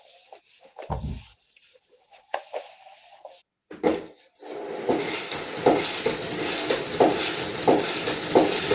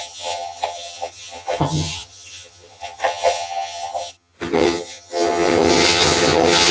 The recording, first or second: first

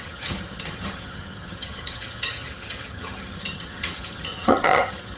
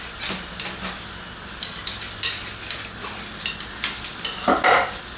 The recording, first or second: second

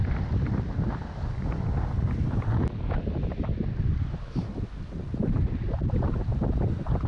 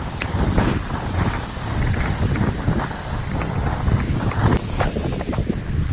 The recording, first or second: first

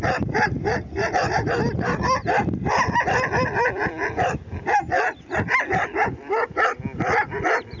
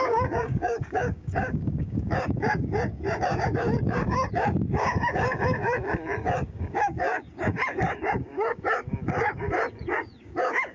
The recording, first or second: first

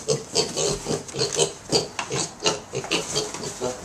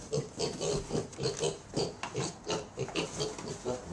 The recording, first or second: first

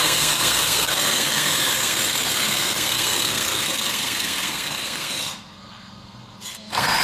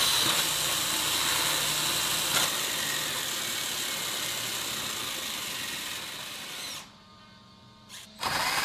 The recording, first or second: second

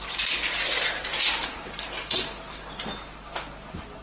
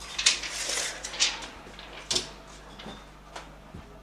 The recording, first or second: second